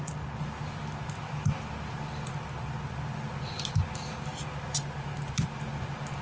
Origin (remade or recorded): recorded